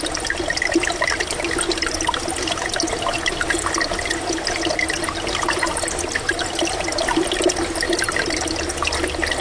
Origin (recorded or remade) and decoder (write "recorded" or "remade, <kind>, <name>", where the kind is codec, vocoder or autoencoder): recorded